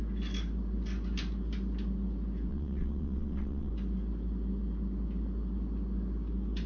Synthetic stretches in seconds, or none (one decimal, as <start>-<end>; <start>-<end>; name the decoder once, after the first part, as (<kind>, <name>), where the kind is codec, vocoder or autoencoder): 2.5-3.7 (vocoder, WaveNeXt)